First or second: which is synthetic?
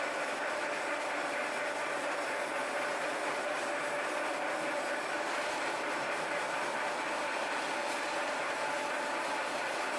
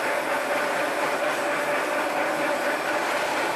second